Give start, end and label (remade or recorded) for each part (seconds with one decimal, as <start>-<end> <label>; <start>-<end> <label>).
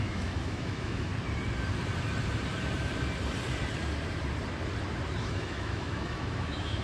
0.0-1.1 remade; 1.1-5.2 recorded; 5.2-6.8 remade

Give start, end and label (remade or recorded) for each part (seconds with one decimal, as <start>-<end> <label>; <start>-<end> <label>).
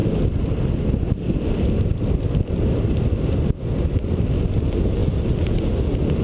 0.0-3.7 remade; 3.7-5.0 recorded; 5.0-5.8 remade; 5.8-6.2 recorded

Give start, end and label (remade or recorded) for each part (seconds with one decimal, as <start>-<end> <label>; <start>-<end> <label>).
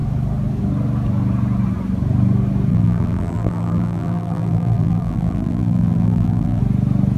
0.0-2.7 recorded; 2.7-6.6 remade; 6.6-7.2 recorded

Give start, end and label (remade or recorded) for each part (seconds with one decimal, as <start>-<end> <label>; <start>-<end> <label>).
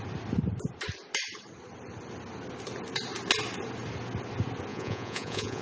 0.0-4.7 recorded; 4.7-5.6 remade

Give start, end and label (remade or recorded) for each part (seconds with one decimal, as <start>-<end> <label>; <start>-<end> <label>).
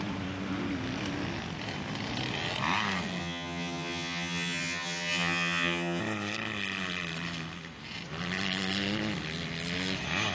0.0-3.2 recorded; 3.2-6.0 remade; 6.0-10.3 recorded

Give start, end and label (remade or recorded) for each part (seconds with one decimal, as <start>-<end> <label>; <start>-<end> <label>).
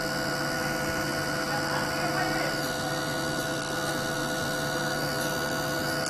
0.0-6.1 recorded